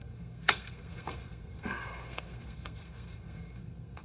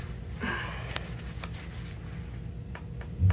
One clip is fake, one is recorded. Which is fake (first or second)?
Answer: first